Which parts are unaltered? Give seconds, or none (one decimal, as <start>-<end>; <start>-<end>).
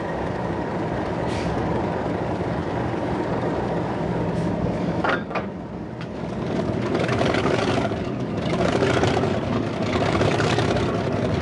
none